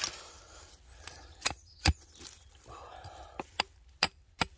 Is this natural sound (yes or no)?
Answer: yes